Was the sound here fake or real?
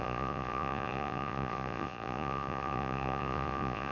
fake